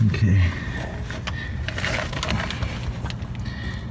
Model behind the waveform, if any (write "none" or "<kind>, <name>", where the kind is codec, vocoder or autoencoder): none